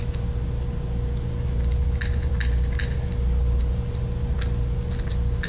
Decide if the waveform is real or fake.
real